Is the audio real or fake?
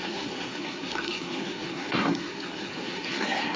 fake